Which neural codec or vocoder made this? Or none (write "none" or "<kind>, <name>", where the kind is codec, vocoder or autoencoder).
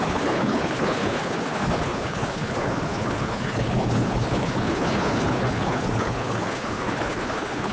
codec, HILCodec